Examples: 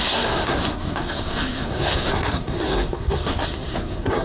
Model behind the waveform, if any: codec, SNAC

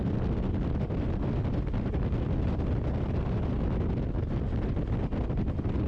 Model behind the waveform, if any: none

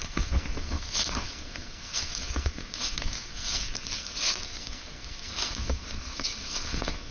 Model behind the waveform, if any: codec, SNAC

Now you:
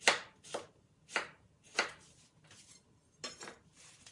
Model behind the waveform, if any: none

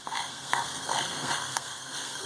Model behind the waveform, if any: codec, SNAC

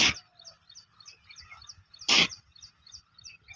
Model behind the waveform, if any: none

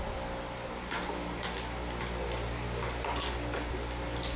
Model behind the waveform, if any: none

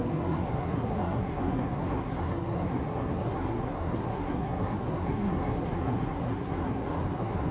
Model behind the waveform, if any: codec, SNAC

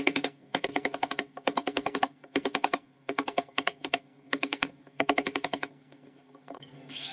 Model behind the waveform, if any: codec, SNAC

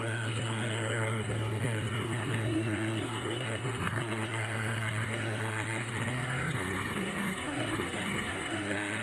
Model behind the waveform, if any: codec, SNAC